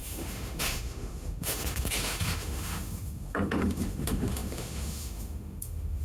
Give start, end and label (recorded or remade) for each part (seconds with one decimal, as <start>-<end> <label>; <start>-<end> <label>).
0.0-6.0 remade